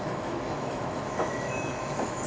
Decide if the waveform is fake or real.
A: fake